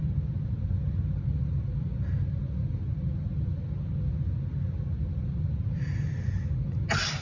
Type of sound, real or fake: real